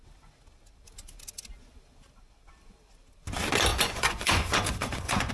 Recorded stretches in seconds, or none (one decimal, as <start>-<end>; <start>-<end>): 0.0-3.7